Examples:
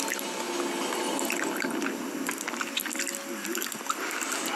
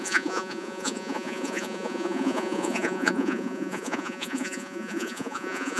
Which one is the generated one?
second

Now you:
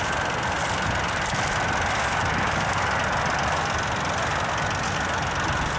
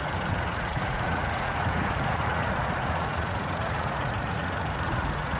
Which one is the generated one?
second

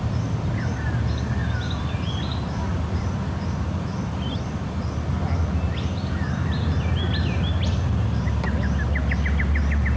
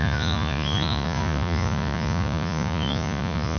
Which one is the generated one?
second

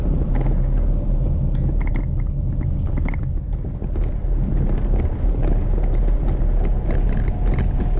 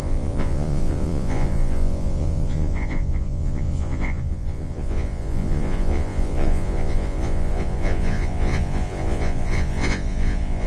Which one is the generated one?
second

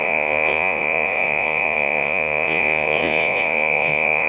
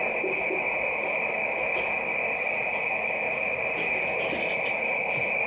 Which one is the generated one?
first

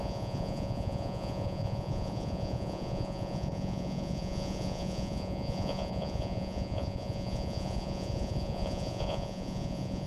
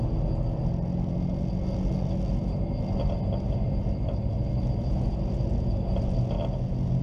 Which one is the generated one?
first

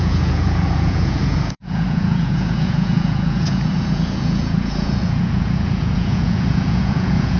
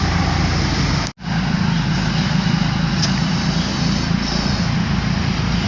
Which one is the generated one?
first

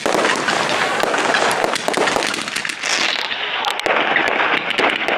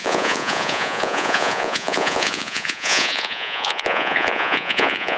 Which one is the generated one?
second